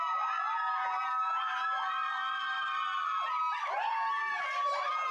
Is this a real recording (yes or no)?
yes